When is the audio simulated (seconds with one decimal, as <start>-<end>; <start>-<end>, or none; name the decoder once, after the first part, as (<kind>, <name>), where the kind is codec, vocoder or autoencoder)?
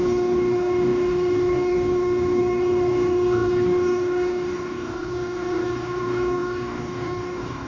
0.0-7.7 (codec, DAC)